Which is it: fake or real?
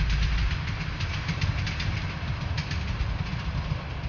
real